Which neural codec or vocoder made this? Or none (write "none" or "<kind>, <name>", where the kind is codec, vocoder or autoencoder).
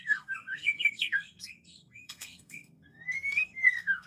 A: codec, SNAC